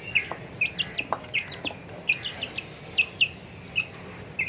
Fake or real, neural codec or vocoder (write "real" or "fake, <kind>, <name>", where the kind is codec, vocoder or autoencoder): real